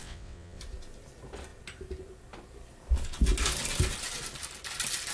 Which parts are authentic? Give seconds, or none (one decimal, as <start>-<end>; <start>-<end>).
0.6-5.1